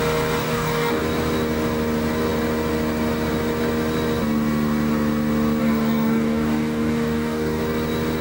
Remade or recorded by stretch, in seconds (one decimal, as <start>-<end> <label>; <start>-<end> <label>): 0.0-0.4 recorded; 0.4-1.0 remade; 1.0-5.6 recorded; 5.6-7.6 remade; 7.6-8.2 recorded